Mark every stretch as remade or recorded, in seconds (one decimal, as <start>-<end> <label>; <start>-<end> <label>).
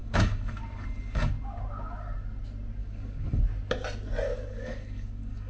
0.0-1.3 remade; 1.3-2.8 recorded; 2.8-3.4 remade; 3.4-4.3 recorded; 4.3-5.5 remade